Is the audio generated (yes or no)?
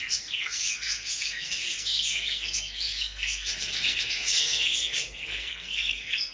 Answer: yes